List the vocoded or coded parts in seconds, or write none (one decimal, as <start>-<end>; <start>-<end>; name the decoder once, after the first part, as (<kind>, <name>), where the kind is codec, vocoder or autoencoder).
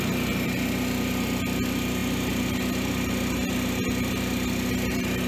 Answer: none